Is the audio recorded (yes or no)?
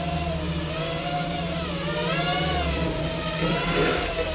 yes